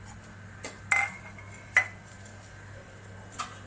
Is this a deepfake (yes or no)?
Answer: no